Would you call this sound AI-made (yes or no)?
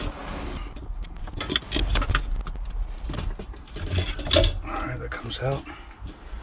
no